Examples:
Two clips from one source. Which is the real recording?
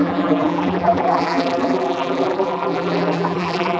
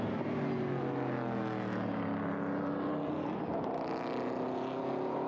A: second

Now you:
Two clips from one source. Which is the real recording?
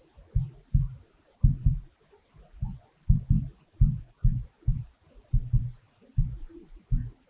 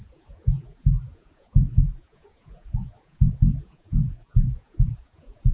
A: first